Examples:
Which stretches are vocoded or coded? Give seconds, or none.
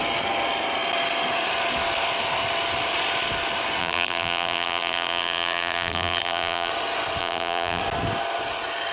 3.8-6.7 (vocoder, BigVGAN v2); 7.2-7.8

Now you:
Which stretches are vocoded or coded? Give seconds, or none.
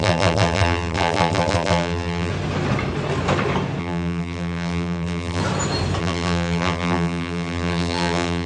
0.0-2.3 (vocoder, BigVGAN v2); 3.8-5.4; 6.0-8.5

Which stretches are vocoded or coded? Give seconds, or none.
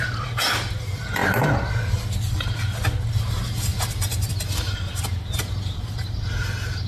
0.0-1.2 (vocoder, BigVGAN v2); 3.1-6.9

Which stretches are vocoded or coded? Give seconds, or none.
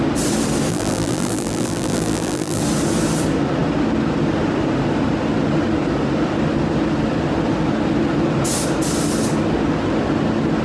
0.7-2.6 (vocoder, BigVGAN v2)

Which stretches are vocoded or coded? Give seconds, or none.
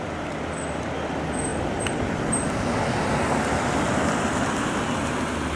none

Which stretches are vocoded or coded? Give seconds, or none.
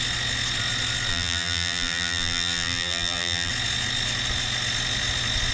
1.1-3.5 (vocoder, BigVGAN v2)